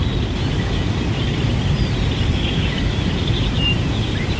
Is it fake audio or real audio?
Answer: fake